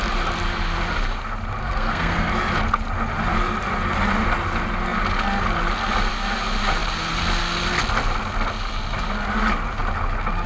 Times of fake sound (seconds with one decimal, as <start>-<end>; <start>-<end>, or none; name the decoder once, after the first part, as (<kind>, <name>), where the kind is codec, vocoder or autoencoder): 1.6-2.3 (codec, SNAC)